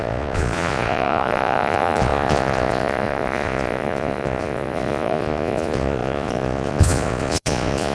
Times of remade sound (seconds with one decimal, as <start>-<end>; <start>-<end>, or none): 0.0-7.9